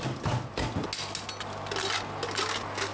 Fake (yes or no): no